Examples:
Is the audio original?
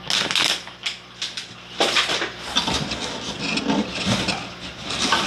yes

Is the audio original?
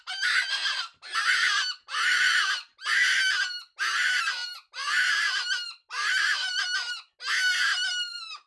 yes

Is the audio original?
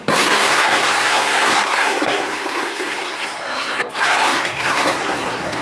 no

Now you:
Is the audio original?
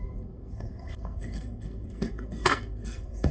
no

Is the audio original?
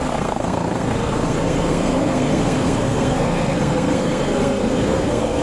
no